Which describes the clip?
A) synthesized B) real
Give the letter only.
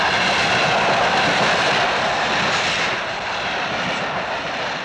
A